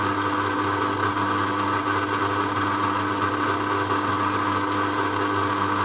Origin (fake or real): real